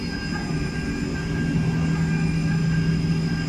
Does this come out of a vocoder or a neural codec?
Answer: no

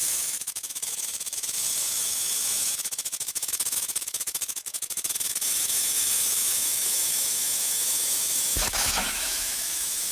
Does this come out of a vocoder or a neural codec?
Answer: yes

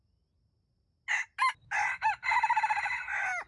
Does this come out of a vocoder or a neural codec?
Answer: no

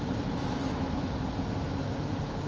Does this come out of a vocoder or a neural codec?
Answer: no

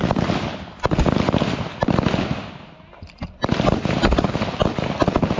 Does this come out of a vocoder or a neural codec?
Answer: no